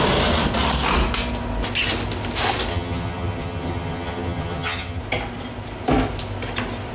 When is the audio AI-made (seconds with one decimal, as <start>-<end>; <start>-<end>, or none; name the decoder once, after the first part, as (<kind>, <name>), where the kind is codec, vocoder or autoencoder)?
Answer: 2.7-5.0 (vocoder, HiFi-GAN)